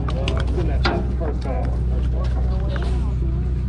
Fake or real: real